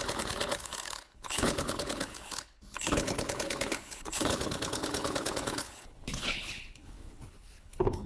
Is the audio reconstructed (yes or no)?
yes